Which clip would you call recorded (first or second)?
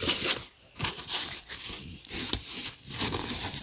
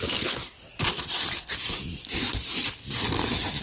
second